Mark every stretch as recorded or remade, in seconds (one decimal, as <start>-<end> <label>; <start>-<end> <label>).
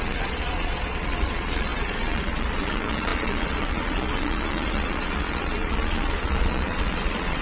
0.0-7.4 remade